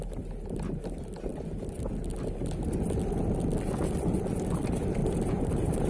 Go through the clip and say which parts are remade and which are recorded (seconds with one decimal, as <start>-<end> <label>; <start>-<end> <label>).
0.0-5.0 recorded; 5.0-5.9 remade